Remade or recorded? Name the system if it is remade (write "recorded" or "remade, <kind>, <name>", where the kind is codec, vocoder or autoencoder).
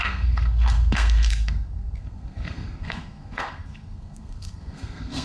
remade, codec, SNAC